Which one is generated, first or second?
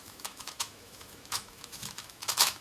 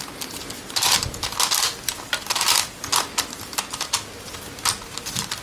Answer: first